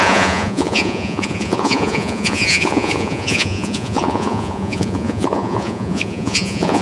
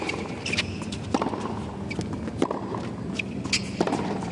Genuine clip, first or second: second